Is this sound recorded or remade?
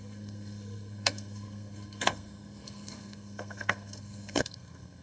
remade